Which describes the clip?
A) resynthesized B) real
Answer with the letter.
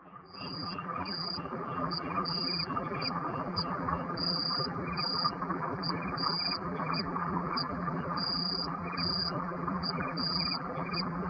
A